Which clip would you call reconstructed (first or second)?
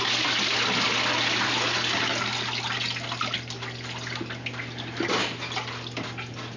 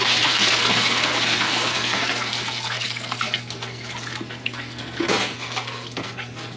second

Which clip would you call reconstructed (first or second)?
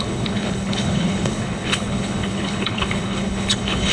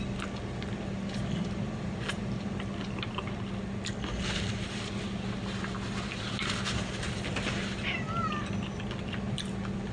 first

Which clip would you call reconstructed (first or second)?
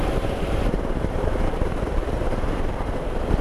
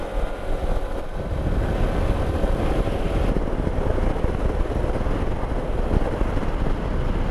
first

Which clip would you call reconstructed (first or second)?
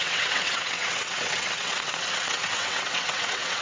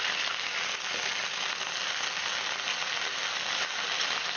first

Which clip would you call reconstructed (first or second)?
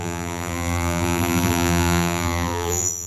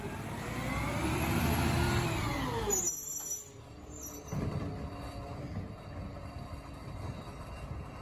first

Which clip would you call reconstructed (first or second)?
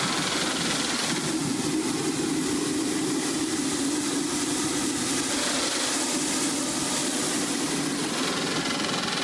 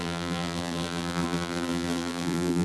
second